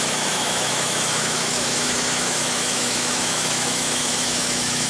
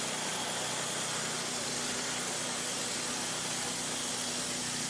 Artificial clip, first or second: first